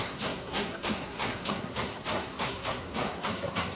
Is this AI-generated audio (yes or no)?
yes